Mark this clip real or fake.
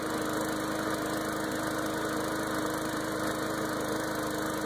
real